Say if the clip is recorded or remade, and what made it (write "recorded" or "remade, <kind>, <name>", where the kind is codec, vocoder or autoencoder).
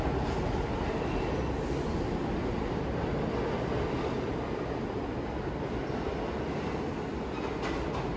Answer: recorded